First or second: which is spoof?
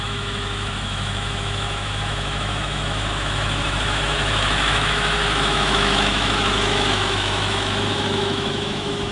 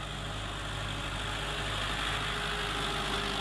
first